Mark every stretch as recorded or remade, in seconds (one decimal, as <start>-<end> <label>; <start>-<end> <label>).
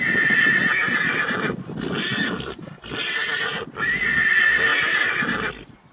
0.0-5.9 recorded